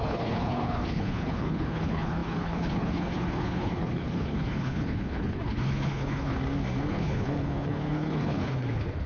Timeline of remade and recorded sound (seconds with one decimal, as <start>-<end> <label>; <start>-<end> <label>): 0.0-6.4 remade; 6.4-6.9 recorded; 6.9-9.1 remade